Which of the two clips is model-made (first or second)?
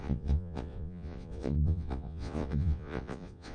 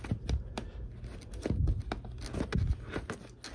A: first